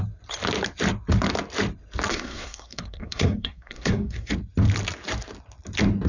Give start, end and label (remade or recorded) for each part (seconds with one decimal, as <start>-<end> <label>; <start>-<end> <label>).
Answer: 0.0-2.1 recorded; 2.1-4.3 remade; 4.3-6.1 recorded